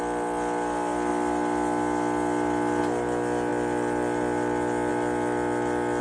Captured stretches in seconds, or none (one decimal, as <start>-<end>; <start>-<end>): 0.0-6.0